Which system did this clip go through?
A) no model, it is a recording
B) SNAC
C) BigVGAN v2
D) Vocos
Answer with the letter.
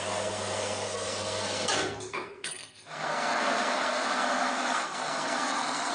B